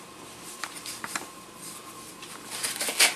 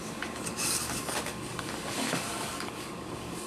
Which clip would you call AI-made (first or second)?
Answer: second